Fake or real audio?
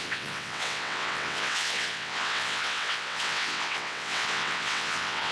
fake